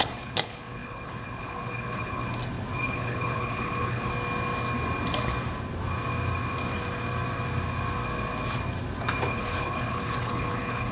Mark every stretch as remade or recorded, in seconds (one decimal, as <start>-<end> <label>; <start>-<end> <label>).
0.0-2.2 remade; 2.2-2.8 recorded; 2.8-4.1 remade; 4.1-9.3 recorded; 9.3-10.9 remade